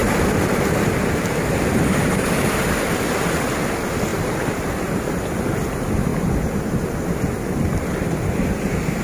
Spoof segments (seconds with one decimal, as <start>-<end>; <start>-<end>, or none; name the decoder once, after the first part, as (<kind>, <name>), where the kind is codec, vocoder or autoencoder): 0.0-2.3 (vocoder, BigVGAN v2); 4.1-4.7